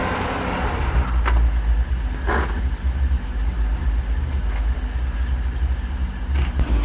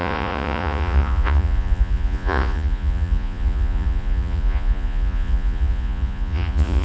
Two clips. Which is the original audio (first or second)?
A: first